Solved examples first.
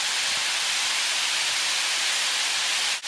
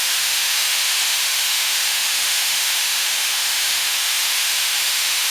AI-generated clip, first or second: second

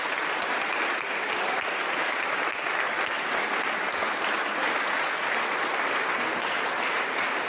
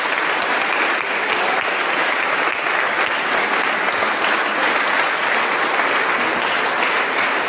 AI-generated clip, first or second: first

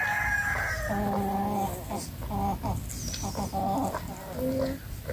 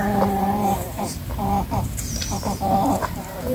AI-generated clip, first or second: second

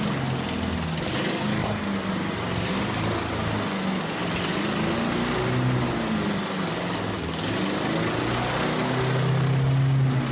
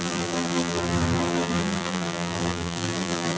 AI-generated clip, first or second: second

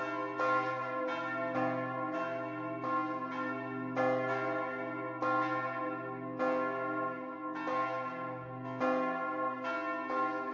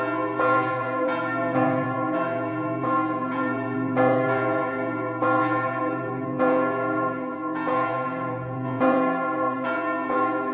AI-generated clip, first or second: second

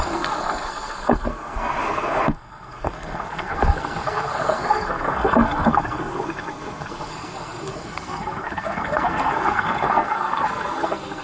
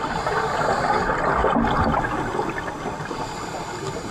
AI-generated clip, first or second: first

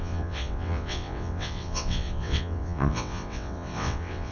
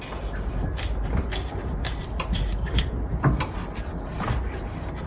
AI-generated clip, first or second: first